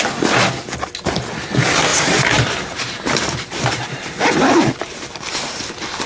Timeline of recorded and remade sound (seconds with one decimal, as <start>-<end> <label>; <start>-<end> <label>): 0.0-1.9 recorded; 1.9-5.6 remade; 5.6-6.1 recorded